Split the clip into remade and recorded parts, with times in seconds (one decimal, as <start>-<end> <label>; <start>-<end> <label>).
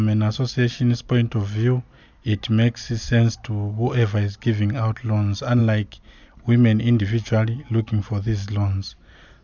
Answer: 0.0-9.4 recorded